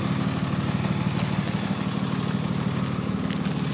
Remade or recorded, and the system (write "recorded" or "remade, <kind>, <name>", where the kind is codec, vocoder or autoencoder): recorded